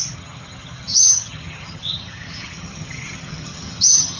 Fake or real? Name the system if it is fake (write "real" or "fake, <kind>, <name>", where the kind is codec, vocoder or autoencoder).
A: fake, vocoder, HiFi-GAN